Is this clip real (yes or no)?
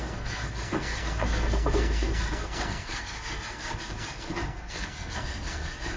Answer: no